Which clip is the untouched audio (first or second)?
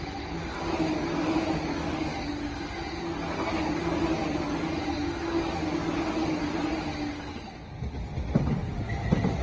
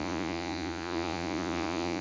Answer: first